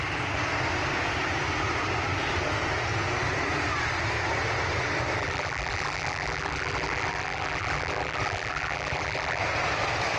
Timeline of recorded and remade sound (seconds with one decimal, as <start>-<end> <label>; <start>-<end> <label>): 0.0-5.2 recorded; 5.2-9.4 remade; 9.4-10.2 recorded